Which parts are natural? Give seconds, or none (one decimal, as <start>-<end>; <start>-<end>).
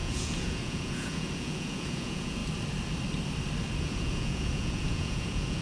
2.4-3.8